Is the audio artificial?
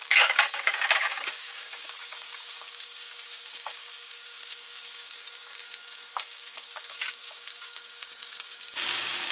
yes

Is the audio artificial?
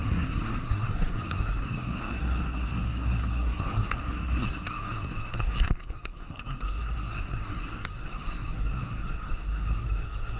yes